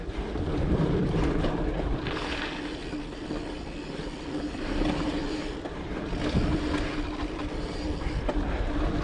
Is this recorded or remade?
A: remade